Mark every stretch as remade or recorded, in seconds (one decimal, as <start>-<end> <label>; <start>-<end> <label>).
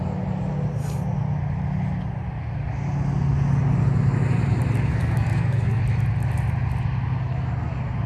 0.0-4.9 recorded; 4.9-5.8 remade; 5.8-8.1 recorded